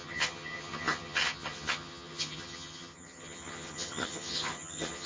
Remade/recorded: remade